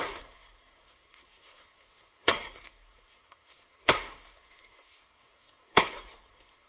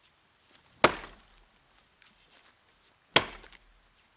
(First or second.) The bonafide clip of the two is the second